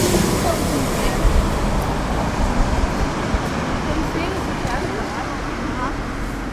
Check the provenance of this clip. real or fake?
real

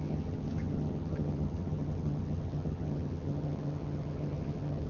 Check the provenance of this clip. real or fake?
fake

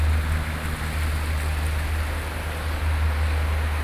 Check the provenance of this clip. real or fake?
real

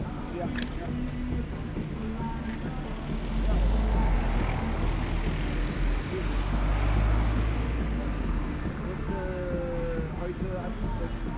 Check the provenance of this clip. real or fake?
real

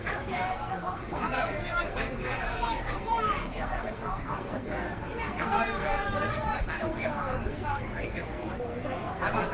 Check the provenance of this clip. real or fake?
fake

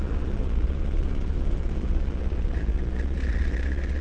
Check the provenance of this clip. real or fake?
fake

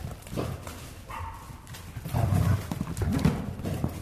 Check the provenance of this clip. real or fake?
real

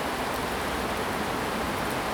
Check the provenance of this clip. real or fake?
real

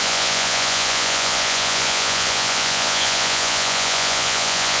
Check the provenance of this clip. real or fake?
fake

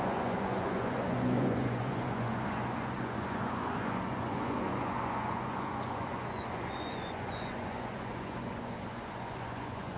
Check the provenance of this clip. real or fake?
fake